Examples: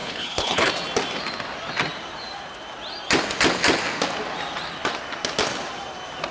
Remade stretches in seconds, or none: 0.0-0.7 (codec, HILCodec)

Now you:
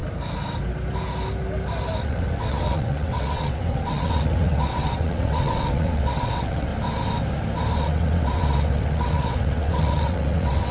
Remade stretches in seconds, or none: 2.0-6.7 (vocoder, WaveNeXt); 7.8-10.7

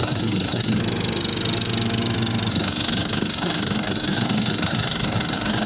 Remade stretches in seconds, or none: 0.0-0.8 (codec, SNAC); 2.5-5.7

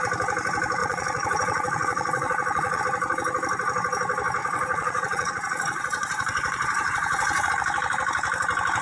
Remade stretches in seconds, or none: 0.8-2.8 (vocoder, Vocos); 4.4-7.5

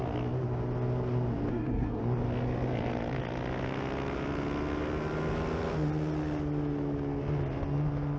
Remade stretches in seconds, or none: 1.5-2.0 (codec, SNAC)

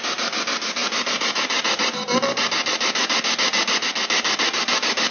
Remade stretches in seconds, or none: none

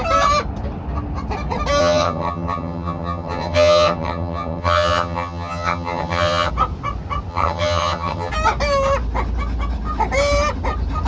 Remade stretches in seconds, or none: 1.8-6.5 (vocoder, HiFi-GAN); 7.3-8.3

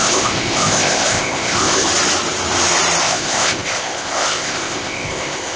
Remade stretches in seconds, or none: 0.0-1.9 (codec, ZipCodec); 3.0-5.6